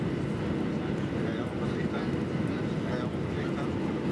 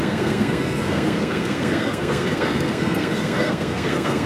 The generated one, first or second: second